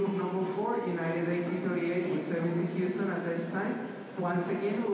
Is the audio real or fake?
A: real